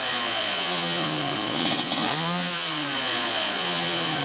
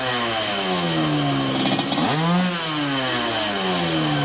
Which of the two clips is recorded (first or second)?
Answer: second